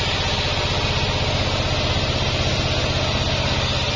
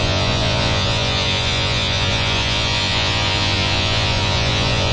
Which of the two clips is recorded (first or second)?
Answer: first